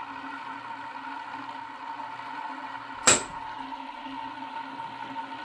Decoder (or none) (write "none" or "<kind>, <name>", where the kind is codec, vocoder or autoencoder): none